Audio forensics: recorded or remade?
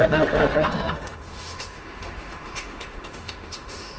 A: remade